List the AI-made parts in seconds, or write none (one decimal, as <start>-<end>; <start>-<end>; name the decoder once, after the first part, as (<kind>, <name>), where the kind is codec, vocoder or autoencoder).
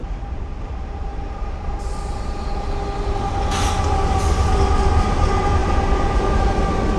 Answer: none